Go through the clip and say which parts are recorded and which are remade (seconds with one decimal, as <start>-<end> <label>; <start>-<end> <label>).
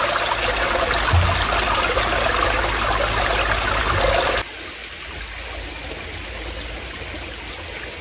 0.0-8.0 recorded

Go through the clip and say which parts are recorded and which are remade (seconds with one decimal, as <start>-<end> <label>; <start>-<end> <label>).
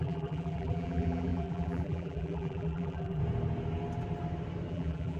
0.0-3.2 remade; 3.2-4.7 recorded; 4.7-5.2 remade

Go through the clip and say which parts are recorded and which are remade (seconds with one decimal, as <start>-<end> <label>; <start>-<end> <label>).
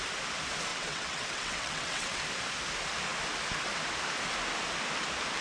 0.0-0.7 recorded; 0.7-2.2 remade; 2.2-5.4 recorded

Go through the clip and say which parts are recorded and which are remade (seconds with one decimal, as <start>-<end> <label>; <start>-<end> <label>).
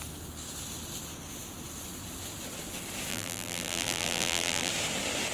0.0-3.1 recorded; 3.1-4.7 remade; 4.7-5.3 recorded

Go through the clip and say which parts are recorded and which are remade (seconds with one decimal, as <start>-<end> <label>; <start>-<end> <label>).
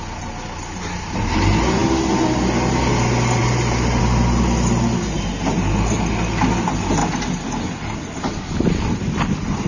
0.0-3.4 recorded; 3.4-4.0 remade; 4.0-9.7 recorded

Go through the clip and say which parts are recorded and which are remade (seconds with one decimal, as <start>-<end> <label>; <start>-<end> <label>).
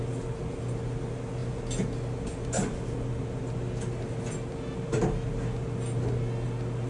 0.0-6.9 recorded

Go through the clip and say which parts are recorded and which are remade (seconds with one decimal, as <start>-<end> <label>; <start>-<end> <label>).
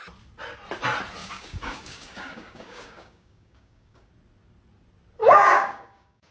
0.0-1.2 recorded; 1.2-4.1 remade; 4.1-5.2 recorded; 5.2-6.3 remade